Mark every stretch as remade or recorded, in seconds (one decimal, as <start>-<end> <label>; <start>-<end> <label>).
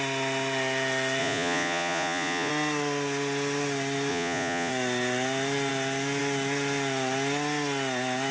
0.0-1.2 recorded; 1.2-2.5 remade; 2.5-4.1 recorded; 4.1-4.7 remade; 4.7-8.3 recorded